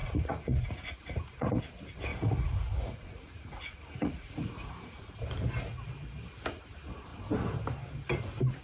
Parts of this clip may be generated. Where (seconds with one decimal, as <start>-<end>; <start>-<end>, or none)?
0.0-1.6; 2.1-5.1